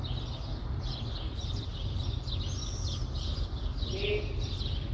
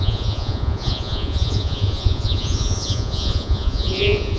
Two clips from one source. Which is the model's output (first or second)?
second